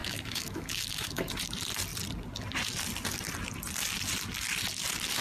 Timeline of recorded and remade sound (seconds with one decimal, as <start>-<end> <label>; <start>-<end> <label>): 0.0-1.3 remade; 1.3-5.2 recorded